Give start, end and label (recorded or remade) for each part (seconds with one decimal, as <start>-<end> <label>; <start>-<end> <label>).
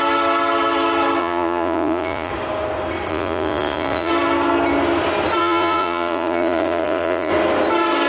0.0-1.2 recorded; 1.2-2.3 remade; 2.3-3.1 recorded; 3.1-4.1 remade; 4.1-5.4 recorded; 5.4-7.3 remade; 7.3-8.1 recorded